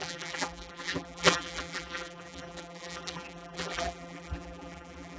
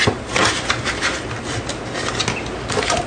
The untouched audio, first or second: second